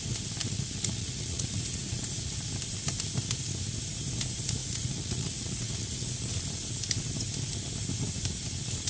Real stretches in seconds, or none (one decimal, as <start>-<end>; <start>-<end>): 0.0-0.4; 2.4-4.6; 6.4-8.9